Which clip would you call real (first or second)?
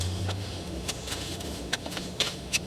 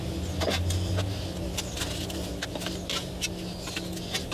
second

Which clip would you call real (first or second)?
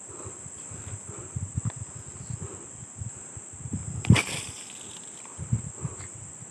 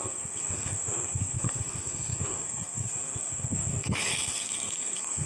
first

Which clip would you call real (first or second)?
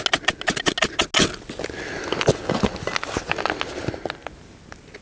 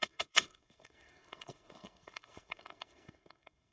first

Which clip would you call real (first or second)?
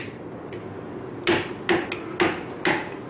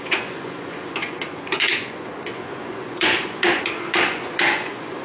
first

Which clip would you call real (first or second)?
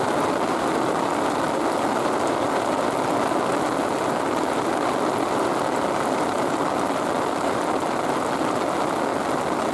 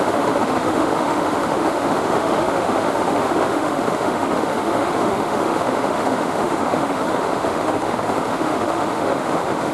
first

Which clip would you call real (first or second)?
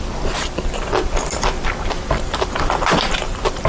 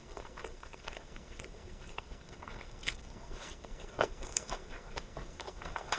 first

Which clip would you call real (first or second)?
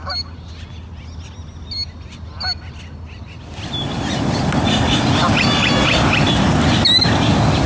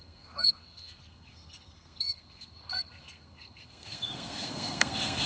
first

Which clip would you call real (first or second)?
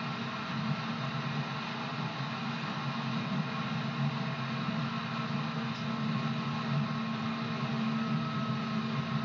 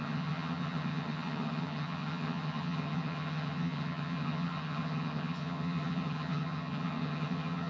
first